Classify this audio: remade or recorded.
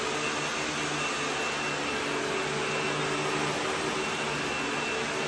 recorded